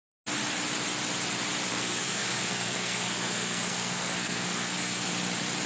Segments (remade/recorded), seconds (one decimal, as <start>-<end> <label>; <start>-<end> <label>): 0.0-1.7 recorded; 1.7-5.1 remade; 5.1-5.7 recorded